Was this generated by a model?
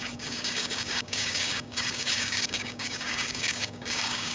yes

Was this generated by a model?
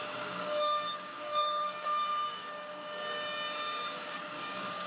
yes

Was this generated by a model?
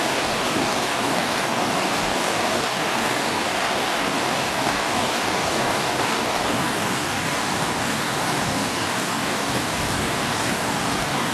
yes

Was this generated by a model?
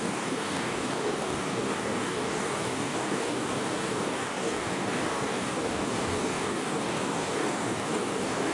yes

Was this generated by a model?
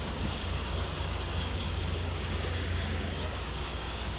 yes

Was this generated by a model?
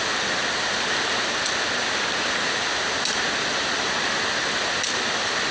no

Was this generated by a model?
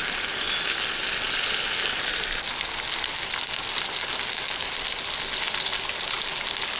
no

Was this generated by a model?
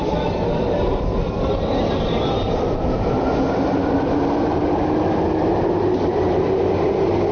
no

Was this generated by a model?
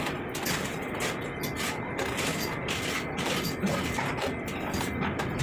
no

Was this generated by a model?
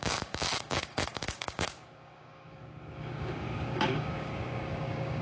yes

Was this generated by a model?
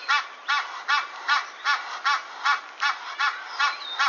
no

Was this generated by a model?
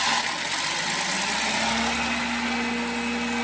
no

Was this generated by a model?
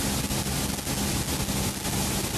no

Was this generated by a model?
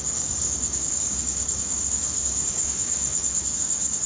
yes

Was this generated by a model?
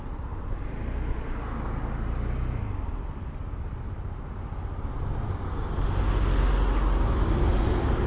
no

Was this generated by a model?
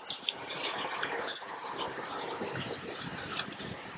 no